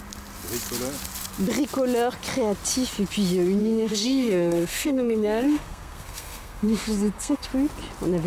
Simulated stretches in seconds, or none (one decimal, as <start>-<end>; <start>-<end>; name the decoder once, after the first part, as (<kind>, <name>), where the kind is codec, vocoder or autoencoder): 3.6-7.5 (codec, SNAC)